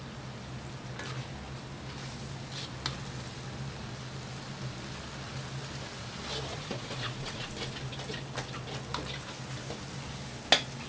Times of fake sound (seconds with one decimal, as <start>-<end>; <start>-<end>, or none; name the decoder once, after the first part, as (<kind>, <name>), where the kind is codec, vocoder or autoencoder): 6.5-7.5 (vocoder, Vocos)